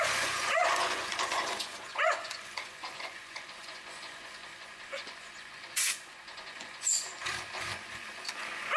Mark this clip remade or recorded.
remade